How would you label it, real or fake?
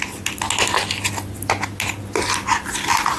real